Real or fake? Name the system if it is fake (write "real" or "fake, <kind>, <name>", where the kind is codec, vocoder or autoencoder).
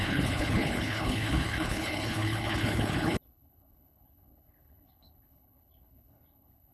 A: fake, codec, HILCodec